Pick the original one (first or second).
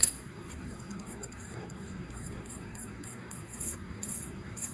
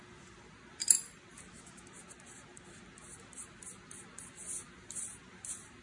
second